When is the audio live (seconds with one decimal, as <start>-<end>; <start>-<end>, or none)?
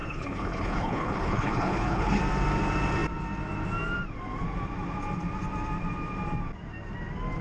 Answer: 2.2-7.4